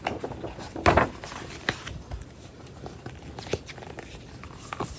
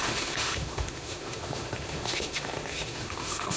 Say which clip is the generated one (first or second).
second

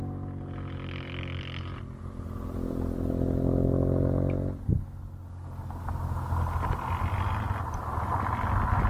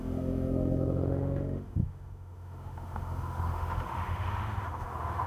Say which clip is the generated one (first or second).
second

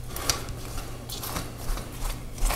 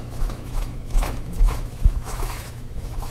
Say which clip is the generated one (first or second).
second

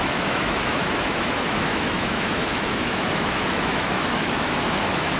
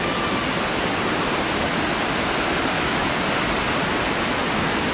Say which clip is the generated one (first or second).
first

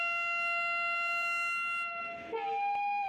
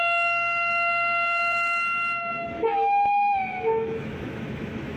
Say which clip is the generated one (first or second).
second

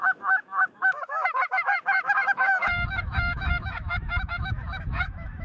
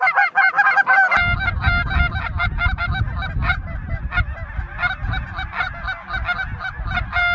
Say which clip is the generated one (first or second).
first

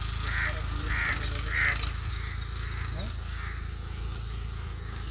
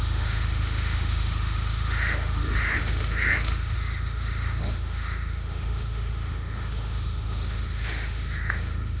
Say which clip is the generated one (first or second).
second